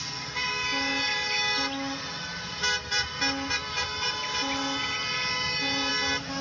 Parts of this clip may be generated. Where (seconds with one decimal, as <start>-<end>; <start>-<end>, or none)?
none

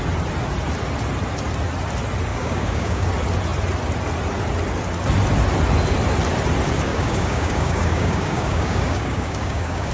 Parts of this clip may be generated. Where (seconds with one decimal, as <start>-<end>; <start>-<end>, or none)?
2.3-3.1; 6.9-9.9

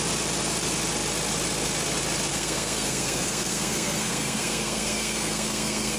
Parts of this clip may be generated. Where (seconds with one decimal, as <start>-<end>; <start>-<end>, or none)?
2.3-6.0

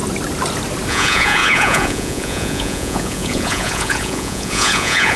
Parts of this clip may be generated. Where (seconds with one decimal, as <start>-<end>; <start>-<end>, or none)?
0.9-5.2

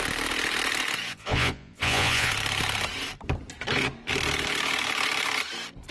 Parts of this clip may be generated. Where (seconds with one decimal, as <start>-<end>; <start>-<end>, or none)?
1.1-2.3